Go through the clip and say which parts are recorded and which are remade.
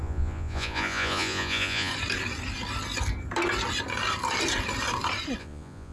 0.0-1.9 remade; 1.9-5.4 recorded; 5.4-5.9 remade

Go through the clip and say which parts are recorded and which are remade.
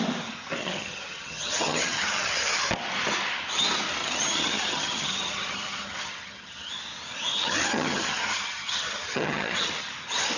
0.0-0.6 recorded; 0.6-2.6 remade; 2.6-4.0 recorded; 4.0-6.7 remade; 6.7-7.3 recorded; 7.3-9.9 remade; 9.9-10.4 recorded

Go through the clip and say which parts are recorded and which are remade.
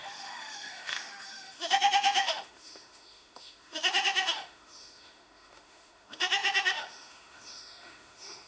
0.0-8.5 remade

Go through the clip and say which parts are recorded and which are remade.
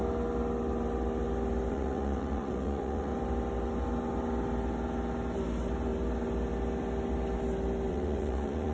0.0-1.7 recorded; 1.7-3.1 remade; 3.1-7.9 recorded; 7.9-8.7 remade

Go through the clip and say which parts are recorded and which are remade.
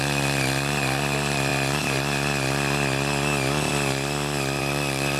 0.0-5.2 recorded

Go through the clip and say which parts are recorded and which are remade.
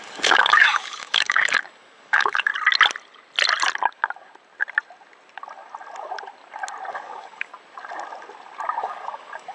0.0-2.5 remade; 2.5-6.9 recorded; 6.9-7.5 remade; 7.5-8.8 recorded; 8.8-9.5 remade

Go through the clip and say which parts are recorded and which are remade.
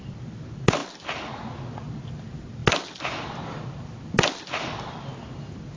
0.0-5.8 recorded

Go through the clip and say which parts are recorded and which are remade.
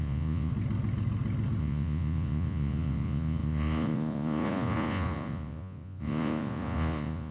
0.0-0.5 remade; 0.5-1.6 recorded; 1.6-7.3 remade